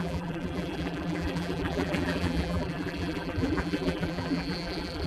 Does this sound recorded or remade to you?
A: remade